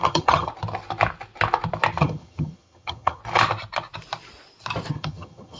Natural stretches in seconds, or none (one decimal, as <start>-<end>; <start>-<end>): 0.5-2.0; 3.2-4.9